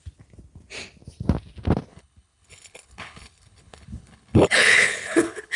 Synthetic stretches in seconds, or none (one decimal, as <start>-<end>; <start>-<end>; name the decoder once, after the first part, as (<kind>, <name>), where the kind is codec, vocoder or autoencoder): 1.9-5.6 (codec, HILCodec)